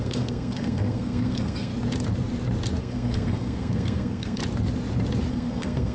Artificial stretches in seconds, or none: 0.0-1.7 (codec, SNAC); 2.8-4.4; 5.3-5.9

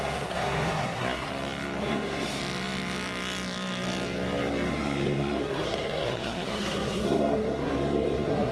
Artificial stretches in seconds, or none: 0.0-1.3 (codec, SNAC); 1.8-2.4; 4.7-8.5

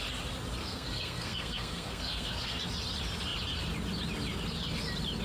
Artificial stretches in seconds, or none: 0.6-2.6 (codec, SNAC)